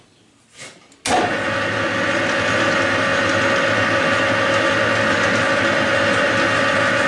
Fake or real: real